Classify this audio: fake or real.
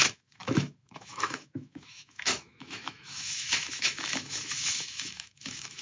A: fake